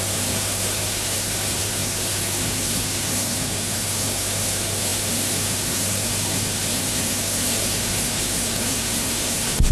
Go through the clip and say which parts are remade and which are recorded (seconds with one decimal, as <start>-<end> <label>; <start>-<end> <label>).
0.0-9.7 remade